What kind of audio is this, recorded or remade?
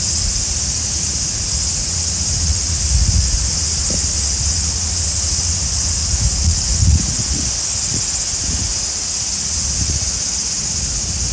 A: remade